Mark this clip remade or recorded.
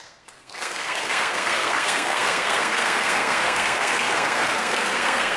remade